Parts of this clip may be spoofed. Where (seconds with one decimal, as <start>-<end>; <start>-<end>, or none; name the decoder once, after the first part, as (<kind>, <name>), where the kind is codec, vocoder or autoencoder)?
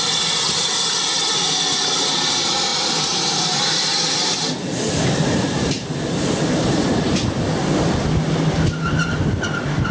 none